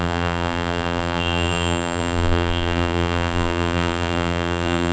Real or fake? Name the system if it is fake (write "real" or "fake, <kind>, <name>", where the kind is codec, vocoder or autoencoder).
fake, vocoder, BigVGAN v2